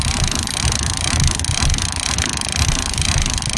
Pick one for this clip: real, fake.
real